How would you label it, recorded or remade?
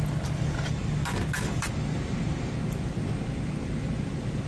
recorded